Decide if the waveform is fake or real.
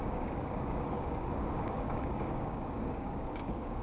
fake